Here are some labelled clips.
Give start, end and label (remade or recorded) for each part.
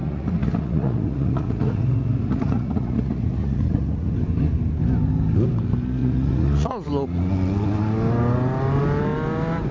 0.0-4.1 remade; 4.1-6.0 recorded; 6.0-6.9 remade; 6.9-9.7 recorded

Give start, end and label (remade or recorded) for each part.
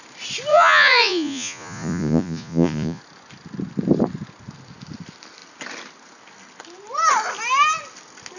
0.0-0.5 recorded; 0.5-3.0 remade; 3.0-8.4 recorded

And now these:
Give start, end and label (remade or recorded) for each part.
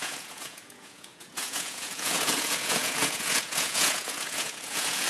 0.0-5.1 remade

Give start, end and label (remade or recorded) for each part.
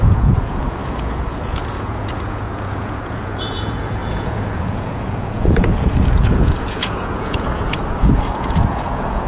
0.0-9.3 remade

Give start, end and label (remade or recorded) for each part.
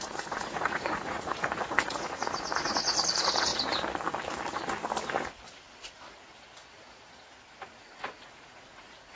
0.0-3.5 remade; 3.5-7.8 recorded; 7.8-9.2 remade